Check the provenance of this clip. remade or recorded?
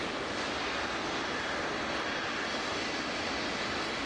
recorded